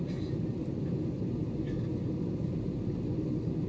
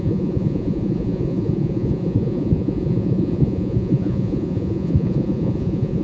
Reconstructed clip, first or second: second